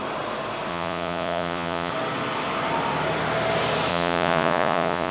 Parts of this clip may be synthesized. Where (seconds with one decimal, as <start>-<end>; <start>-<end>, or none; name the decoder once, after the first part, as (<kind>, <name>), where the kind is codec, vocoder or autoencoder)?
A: 0.7-1.9 (vocoder, Vocos); 3.9-5.1